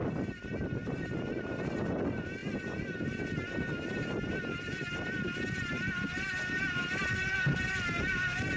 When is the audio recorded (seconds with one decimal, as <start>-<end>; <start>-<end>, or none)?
0.0-0.8; 1.5-8.6